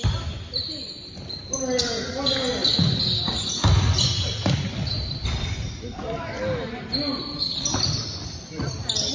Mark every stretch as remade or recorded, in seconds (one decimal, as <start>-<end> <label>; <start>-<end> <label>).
0.0-9.1 recorded